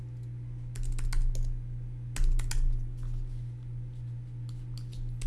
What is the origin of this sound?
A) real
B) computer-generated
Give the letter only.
A